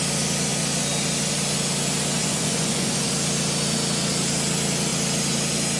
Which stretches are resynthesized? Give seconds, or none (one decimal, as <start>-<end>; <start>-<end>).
2.2-3.1